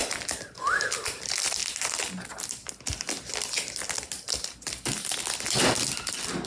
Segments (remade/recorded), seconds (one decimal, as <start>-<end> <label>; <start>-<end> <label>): 0.0-6.5 recorded